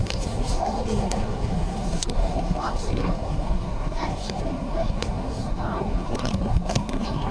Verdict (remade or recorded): remade